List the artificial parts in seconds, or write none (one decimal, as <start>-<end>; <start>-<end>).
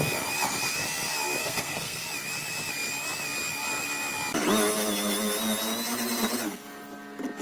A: 1.4-2.0